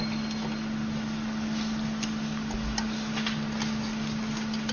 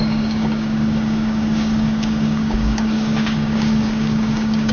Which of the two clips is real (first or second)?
first